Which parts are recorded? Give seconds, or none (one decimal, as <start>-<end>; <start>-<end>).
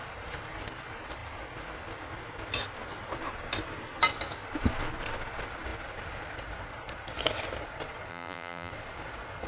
0.0-8.1; 8.7-9.5